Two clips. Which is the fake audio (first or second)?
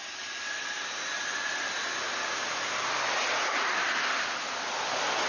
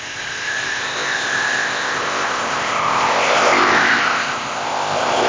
second